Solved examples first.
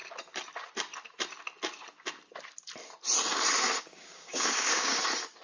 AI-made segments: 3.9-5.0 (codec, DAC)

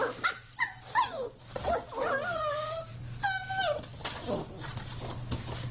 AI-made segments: none

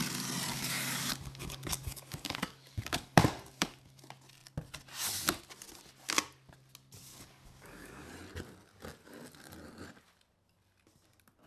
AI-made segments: 0.5-4.0 (codec, DAC); 7.1-8.1